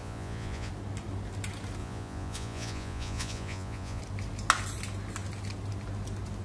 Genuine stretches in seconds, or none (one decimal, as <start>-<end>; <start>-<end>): 0.7-1.8; 4.0-6.4